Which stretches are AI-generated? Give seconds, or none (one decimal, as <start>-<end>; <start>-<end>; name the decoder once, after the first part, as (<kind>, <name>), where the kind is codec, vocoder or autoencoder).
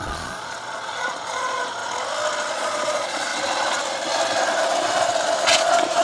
0.0-1.8 (vocoder, Vocos); 2.5-3.3; 5.4-6.0